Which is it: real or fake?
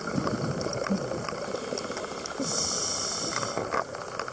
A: real